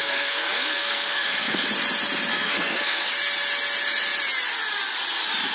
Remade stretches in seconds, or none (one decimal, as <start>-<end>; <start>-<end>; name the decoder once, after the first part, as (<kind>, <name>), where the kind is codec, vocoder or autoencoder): 0.0-1.7 (codec, SNAC); 2.3-3.1